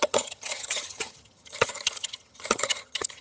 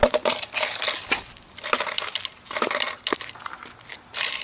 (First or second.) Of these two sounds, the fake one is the first